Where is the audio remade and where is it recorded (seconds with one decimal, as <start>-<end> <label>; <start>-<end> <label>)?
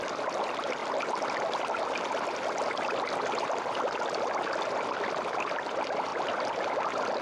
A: 0.0-7.2 recorded